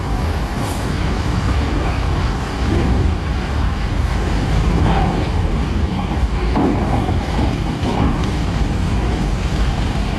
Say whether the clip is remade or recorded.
remade